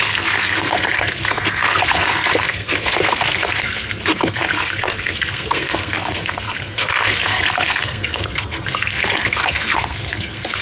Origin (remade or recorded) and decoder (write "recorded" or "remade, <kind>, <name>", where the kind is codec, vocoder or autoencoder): remade, codec, SNAC